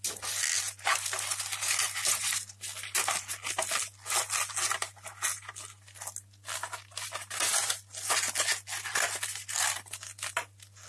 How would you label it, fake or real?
real